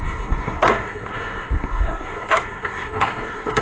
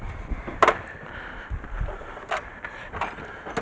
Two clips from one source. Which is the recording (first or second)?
second